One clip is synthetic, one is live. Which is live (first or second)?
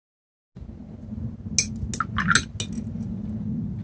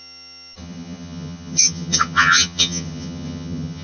first